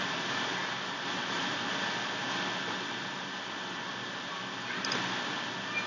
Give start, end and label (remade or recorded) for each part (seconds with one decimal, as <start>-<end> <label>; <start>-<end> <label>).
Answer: 0.0-5.9 recorded